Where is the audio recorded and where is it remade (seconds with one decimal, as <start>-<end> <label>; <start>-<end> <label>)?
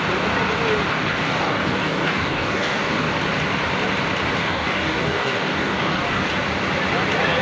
0.0-0.9 recorded; 0.9-3.1 remade; 3.1-4.4 recorded; 4.4-6.3 remade; 6.3-7.4 recorded